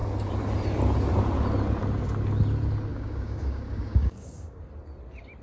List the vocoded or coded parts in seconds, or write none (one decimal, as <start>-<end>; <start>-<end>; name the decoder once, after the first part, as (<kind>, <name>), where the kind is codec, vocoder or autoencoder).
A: 2.9-4.6 (codec, DAC)